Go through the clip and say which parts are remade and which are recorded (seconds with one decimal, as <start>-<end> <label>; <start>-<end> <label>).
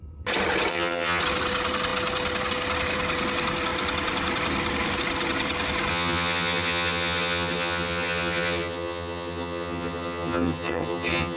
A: 0.0-0.7 recorded; 0.7-1.2 remade; 1.2-5.9 recorded; 5.9-11.4 remade